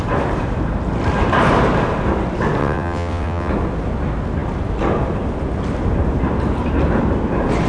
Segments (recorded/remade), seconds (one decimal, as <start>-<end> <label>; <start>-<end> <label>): 0.0-2.6 recorded; 2.6-3.5 remade; 3.5-7.7 recorded